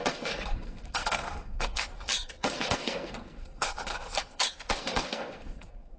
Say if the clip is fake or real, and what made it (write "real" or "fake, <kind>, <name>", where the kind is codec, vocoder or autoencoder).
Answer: fake, codec, SNAC